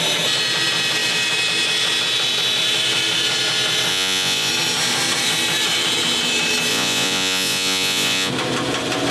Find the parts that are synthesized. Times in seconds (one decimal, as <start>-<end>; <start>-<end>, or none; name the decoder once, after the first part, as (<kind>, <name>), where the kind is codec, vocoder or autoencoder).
3.9-4.5 (vocoder, Vocos); 6.7-8.3